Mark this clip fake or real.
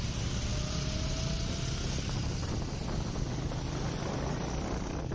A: real